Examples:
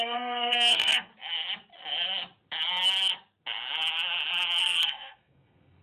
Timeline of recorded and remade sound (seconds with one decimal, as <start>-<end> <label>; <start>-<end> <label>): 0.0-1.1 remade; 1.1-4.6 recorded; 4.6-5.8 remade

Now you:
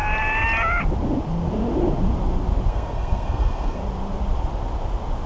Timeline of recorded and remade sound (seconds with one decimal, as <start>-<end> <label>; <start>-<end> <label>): 0.0-2.7 recorded; 2.7-3.8 remade; 3.8-5.3 recorded

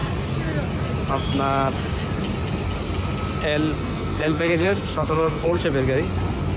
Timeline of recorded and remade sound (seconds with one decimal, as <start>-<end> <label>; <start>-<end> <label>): 0.0-3.8 recorded; 3.8-5.6 remade; 5.6-6.6 recorded